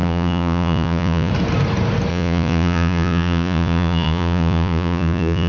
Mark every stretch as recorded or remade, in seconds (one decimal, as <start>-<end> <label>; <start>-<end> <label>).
0.0-1.3 remade; 1.3-2.1 recorded; 2.1-5.5 remade